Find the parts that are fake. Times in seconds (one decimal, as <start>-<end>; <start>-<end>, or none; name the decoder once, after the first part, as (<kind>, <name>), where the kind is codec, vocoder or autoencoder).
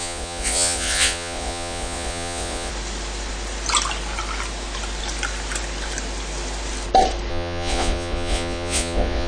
0.0-2.7 (vocoder, Vocos); 7.3-9.3